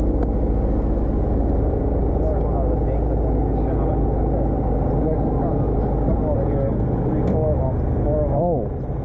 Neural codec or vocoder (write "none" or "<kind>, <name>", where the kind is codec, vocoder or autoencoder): none